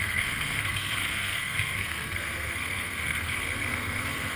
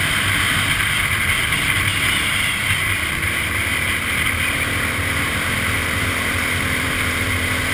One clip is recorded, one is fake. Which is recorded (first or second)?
second